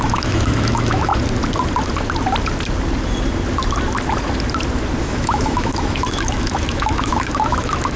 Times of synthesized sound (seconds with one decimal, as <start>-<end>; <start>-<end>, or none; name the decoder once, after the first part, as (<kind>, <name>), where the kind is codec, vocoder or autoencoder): 0.0-1.1 (autoencoder, DAC-VAE); 5.0-8.0